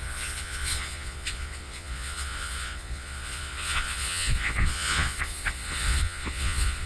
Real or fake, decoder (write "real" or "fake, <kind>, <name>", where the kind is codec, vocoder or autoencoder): fake, vocoder, Vocos